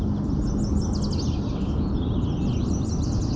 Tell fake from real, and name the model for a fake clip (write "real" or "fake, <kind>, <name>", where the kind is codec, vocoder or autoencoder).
real